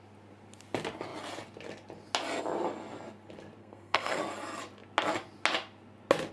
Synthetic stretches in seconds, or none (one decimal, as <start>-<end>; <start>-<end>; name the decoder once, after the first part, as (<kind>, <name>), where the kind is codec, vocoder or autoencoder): 3.6-4.2 (codec, SNAC)